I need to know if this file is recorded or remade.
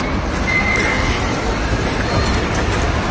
recorded